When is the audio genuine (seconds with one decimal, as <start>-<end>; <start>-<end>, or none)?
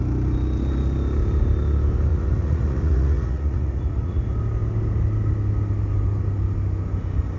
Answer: 0.0-2.1; 4.2-7.4